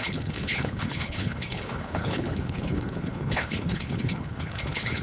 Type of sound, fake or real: fake